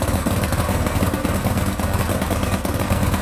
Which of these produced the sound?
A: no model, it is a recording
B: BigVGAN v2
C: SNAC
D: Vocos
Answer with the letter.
C